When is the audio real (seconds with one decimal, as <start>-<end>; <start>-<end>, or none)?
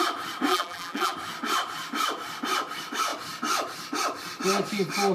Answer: 0.0-0.5; 1.1-5.1